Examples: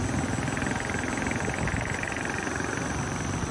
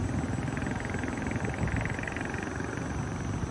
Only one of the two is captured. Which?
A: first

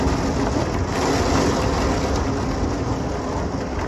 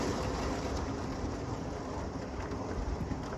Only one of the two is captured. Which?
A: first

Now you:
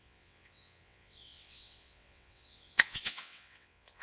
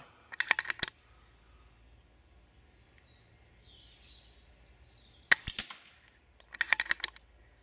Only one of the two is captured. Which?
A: second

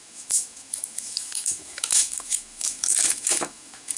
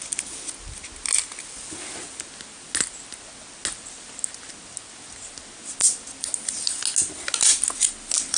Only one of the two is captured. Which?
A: second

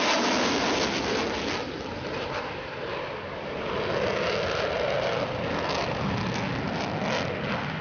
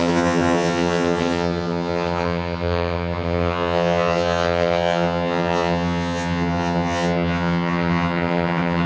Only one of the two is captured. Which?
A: first